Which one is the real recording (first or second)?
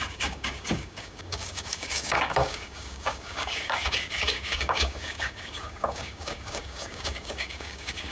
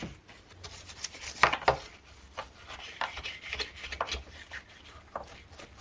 second